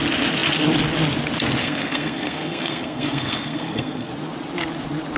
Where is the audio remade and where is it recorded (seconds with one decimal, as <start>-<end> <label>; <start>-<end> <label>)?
0.0-1.6 recorded; 1.6-4.1 remade; 4.1-5.2 recorded